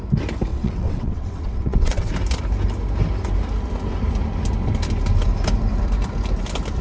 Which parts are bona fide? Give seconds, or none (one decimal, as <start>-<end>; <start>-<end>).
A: 0.0-0.5; 2.1-6.8